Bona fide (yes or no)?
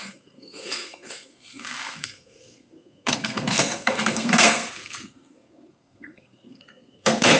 no